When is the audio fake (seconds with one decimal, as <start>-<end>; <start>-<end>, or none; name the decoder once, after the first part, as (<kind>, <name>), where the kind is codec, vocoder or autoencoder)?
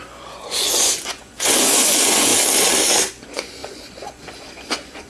0.0-2.3 (vocoder, Vocos); 3.1-5.1